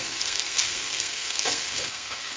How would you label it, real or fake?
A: fake